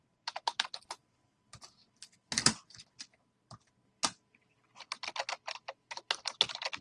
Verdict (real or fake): real